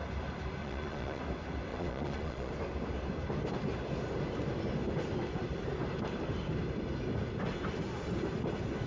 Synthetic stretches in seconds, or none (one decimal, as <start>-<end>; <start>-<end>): 0.6-1.2; 1.7-2.5

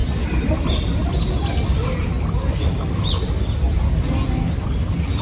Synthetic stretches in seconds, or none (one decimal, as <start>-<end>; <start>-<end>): none

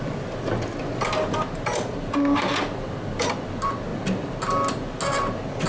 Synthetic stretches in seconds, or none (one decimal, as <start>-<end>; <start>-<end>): none